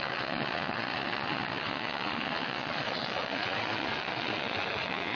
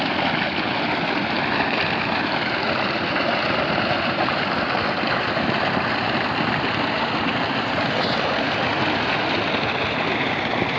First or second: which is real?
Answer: second